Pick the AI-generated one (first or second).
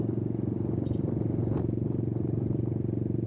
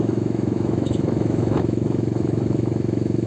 second